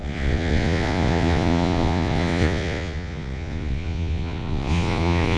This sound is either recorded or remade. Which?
remade